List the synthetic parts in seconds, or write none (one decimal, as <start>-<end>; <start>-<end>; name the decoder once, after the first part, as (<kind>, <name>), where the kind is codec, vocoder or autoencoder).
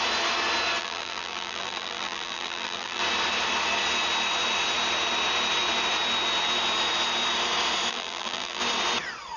0.8-3.0 (vocoder, BigVGAN v2); 7.9-8.6